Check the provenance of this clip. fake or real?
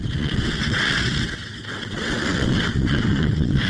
fake